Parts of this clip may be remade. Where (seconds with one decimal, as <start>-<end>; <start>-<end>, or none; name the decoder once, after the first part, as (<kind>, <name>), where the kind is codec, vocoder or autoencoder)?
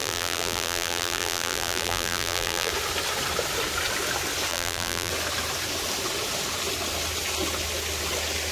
0.0-2.7 (vocoder, BigVGAN v2); 4.5-5.1